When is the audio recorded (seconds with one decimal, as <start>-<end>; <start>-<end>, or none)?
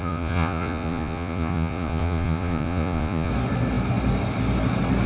3.3-5.1